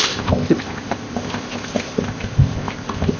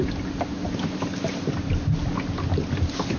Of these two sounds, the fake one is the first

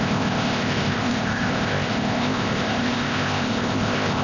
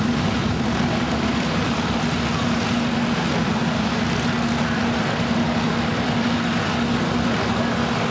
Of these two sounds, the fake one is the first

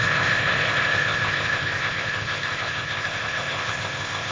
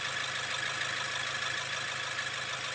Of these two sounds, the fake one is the first